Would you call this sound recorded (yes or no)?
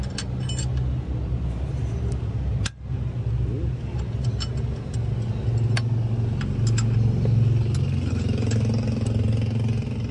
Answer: yes